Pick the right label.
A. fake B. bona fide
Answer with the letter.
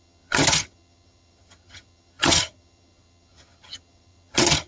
A